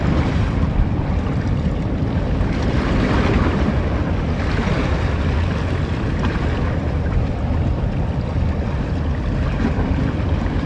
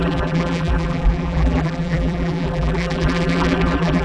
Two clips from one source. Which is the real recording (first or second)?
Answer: first